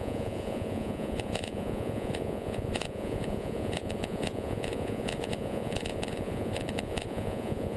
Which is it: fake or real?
fake